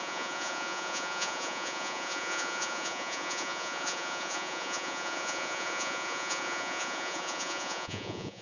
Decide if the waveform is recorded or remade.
remade